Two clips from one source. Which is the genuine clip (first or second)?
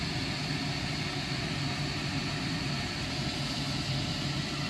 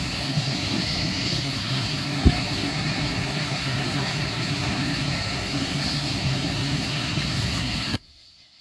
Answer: first